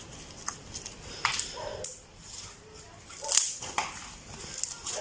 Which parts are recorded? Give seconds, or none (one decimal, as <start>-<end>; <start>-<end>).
0.0-5.0